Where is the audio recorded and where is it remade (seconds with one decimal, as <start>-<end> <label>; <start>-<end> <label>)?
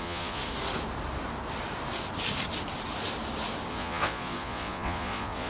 0.0-0.4 remade; 0.4-3.7 recorded; 3.7-5.5 remade